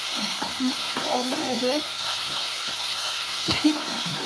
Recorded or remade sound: remade